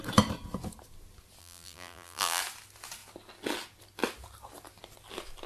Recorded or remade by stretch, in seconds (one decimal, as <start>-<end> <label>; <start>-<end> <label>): 0.0-1.4 recorded; 1.4-2.4 remade; 2.4-5.5 recorded